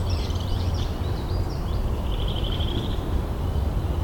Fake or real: fake